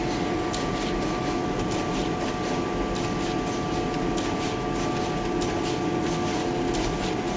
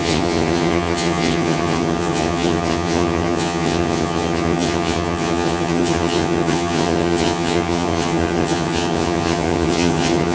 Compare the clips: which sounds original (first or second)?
first